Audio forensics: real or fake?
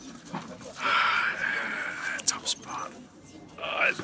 real